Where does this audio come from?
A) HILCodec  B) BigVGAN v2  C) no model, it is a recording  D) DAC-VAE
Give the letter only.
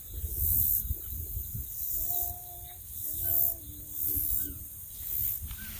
C